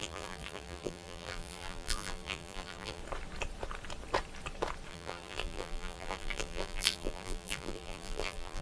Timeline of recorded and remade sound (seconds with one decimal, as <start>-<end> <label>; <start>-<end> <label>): 0.0-3.0 remade; 3.0-4.9 recorded; 4.9-8.6 remade